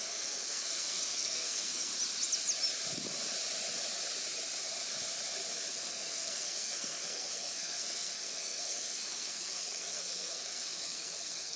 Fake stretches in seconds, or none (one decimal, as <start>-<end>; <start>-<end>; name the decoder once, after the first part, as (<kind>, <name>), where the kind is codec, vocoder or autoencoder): 0.0-1.9 (codec, SNAC); 5.7-11.6